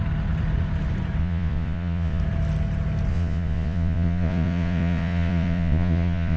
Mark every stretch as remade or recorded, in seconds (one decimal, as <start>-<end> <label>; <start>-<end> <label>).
0.0-1.2 recorded; 1.2-2.2 remade; 2.2-3.1 recorded; 3.1-6.4 remade